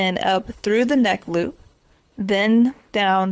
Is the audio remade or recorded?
remade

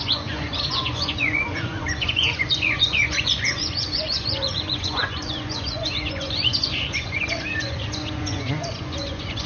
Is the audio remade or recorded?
remade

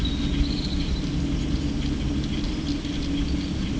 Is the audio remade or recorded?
recorded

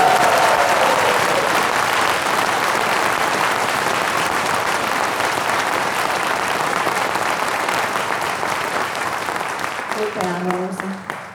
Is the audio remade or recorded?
remade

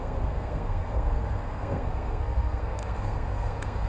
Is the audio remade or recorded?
remade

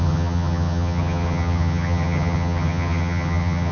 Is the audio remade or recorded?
remade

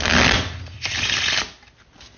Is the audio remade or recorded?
recorded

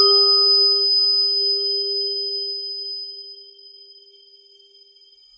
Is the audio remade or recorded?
remade